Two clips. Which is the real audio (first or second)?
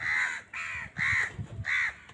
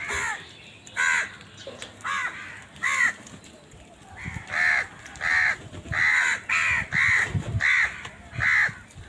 first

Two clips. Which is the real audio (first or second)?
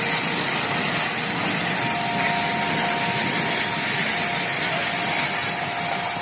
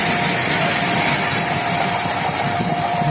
first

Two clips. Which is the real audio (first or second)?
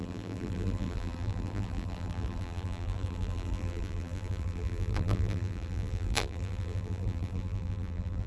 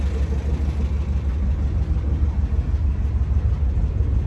second